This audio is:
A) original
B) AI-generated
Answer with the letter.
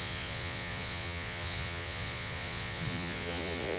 B